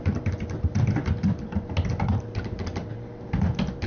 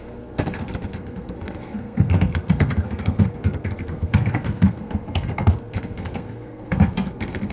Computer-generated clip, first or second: second